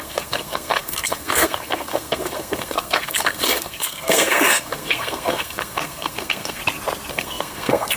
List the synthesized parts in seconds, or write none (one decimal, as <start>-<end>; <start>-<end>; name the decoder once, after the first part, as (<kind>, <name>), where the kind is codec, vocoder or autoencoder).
0.0-6.6 (codec, SNAC); 7.1-8.0